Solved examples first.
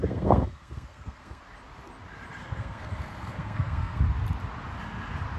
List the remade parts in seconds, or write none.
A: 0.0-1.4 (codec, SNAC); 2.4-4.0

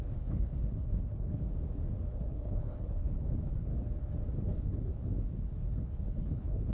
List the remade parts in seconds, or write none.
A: 0.0-1.4 (codec, HILCodec); 2.1-3.7; 4.4-4.9; 5.7-6.7

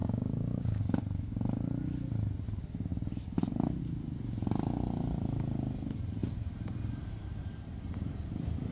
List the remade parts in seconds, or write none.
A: 0.0-0.8 (codec, DAC)

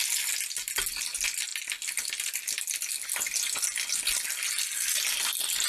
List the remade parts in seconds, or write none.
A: none

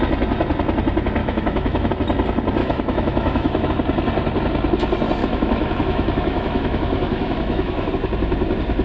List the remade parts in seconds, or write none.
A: 1.2-1.9 (autoencoder, DAC-VAE); 2.6-3.7; 5.2-7.9

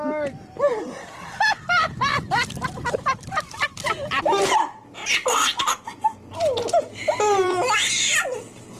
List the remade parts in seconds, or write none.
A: 0.7-4.5 (vocoder, BigVGAN v2); 6.4-8.8

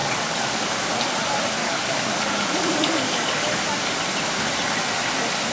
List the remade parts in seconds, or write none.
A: 0.0-0.7 (codec, DAC); 1.6-3.6